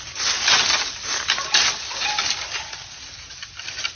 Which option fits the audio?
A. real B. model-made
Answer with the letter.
A